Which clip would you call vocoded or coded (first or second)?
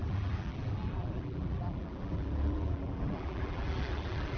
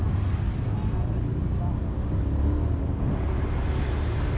first